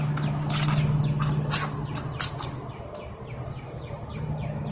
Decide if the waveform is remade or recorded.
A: recorded